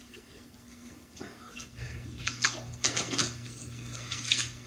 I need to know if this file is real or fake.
fake